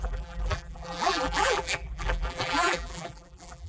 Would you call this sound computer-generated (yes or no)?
yes